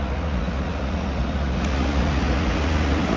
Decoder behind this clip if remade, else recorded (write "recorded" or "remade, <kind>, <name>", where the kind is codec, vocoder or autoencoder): remade, vocoder, Vocos